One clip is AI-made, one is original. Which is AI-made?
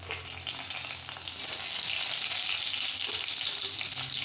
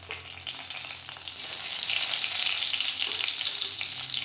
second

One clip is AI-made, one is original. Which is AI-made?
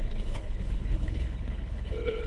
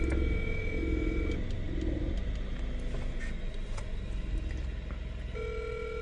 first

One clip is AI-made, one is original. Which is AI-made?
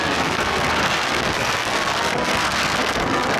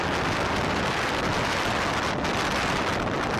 first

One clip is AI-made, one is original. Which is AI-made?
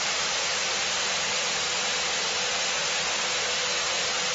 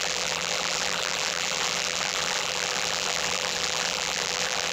second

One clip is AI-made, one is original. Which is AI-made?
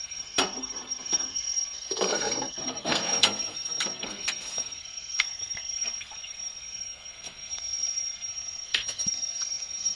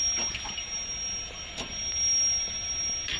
first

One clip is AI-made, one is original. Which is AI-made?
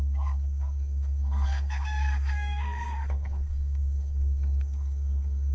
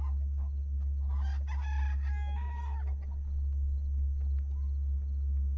first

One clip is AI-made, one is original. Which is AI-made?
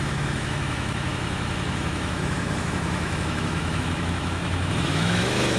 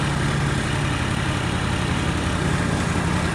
first